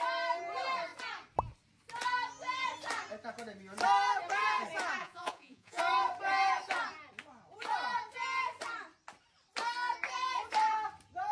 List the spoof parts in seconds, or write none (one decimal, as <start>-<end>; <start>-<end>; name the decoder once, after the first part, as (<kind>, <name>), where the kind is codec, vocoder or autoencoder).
5.0-5.8 (vocoder, Vocos)